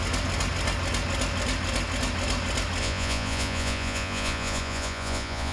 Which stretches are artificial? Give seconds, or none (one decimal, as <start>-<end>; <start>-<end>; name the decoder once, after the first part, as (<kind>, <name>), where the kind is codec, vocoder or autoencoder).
2.8-5.5 (vocoder, Vocos)